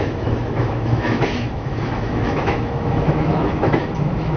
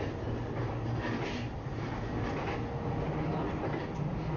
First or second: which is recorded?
second